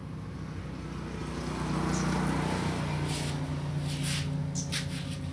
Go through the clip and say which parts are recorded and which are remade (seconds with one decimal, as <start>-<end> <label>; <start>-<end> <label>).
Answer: 0.0-5.3 recorded